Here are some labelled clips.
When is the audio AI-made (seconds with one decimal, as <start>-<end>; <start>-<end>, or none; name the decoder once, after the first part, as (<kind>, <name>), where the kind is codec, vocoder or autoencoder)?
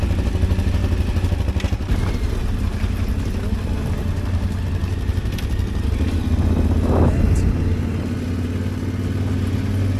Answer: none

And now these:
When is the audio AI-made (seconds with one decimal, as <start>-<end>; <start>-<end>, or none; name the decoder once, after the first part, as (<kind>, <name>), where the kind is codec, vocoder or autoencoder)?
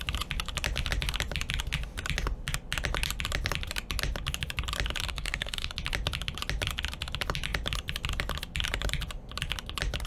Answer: 5.1-5.7 (codec, DAC)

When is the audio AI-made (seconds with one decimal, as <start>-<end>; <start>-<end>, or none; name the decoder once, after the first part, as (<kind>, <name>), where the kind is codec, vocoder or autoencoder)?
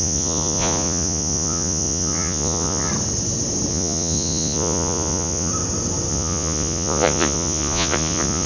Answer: 0.0-2.9 (vocoder, Vocos); 3.7-5.5; 6.1-8.5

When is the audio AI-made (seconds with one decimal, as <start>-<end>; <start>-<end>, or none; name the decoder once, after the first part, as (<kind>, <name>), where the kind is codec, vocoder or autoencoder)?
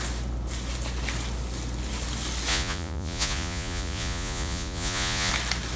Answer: 2.5-5.3 (vocoder, Vocos)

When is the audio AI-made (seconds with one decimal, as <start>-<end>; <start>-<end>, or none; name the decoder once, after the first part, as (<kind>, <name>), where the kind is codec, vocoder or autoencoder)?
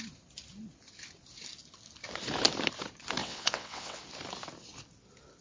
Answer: 3.2-4.0 (vocoder, WaveNeXt)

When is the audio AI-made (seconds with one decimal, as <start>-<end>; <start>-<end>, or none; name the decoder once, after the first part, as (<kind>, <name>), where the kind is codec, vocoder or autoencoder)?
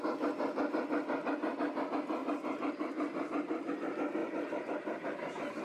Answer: 2.2-3.7 (vocoder, BigVGAN v2); 4.2-5.6